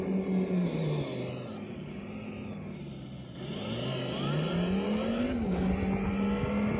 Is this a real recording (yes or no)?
yes